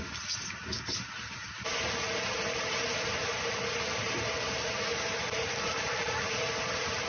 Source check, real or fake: real